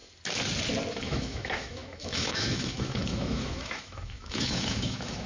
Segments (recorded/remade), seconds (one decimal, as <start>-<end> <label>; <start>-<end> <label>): 0.0-0.9 recorded; 0.9-5.3 remade